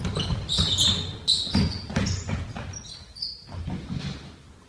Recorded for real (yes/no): yes